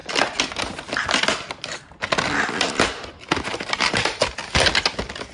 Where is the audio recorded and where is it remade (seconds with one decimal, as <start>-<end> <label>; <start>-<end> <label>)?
0.0-3.5 recorded; 3.5-4.2 remade; 4.2-5.3 recorded